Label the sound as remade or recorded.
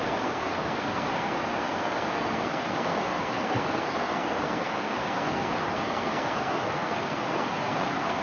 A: remade